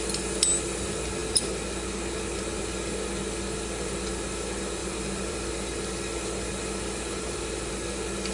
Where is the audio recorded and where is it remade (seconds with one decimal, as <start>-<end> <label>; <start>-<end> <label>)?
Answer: 0.0-4.8 recorded; 4.8-7.7 remade; 7.7-8.3 recorded